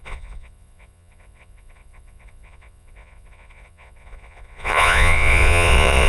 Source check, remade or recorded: remade